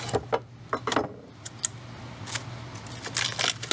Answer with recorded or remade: recorded